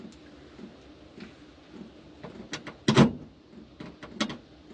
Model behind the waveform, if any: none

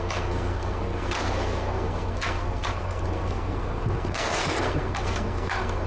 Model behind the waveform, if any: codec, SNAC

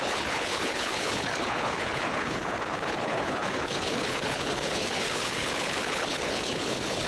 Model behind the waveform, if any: codec, HILCodec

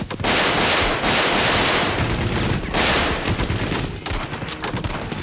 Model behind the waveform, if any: none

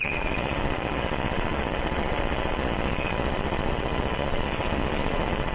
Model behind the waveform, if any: vocoder, Vocos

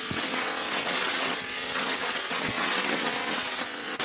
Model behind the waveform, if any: vocoder, WaveNeXt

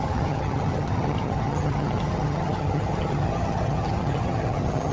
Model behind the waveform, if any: vocoder, HiFi-GAN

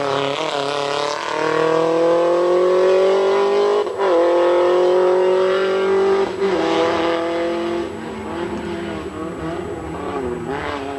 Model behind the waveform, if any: none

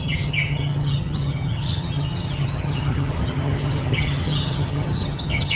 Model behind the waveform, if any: vocoder, HiFi-GAN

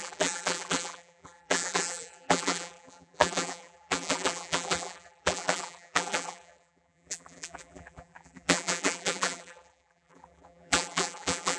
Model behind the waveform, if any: vocoder, BigVGAN v2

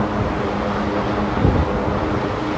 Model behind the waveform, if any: none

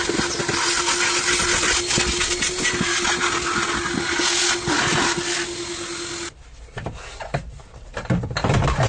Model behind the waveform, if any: none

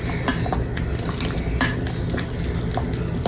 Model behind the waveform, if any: none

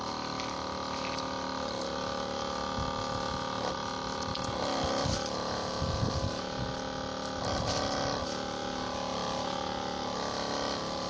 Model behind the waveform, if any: none